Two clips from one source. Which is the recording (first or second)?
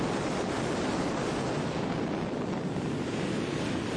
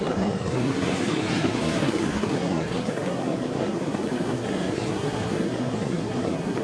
first